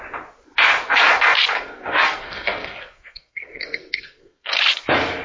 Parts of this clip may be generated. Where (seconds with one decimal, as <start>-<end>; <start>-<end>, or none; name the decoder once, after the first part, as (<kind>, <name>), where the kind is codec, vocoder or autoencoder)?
1.5-4.6 (codec, SNAC)